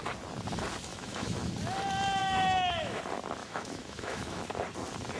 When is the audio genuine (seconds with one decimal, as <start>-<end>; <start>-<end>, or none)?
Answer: 0.0-0.9; 1.5-2.2; 3.0-3.4; 4.4-5.2